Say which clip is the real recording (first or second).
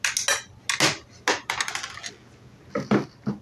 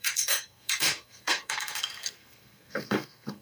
first